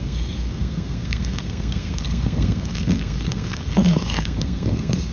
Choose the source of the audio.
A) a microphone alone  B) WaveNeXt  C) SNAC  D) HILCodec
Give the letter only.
C